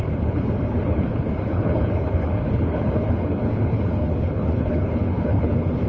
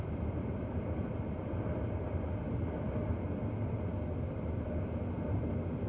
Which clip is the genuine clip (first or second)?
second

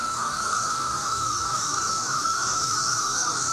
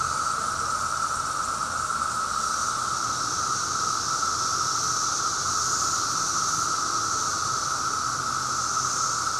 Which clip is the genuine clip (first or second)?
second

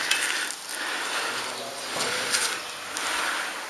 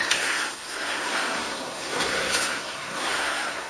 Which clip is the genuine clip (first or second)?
first